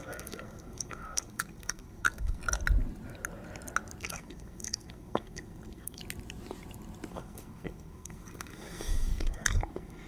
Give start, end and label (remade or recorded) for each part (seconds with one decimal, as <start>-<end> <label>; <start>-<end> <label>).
0.0-2.4 remade; 2.4-4.0 recorded; 4.0-6.0 remade; 6.0-7.1 recorded; 7.1-10.1 remade